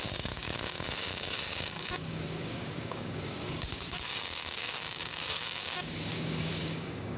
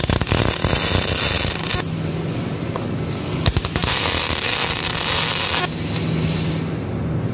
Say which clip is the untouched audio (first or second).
second